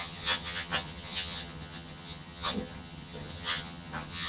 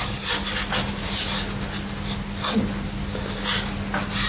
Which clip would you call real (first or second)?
second